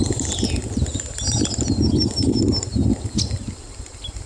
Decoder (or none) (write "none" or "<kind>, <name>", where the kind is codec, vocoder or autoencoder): none